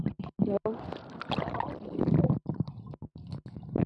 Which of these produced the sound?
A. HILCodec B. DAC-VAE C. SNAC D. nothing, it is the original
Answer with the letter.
D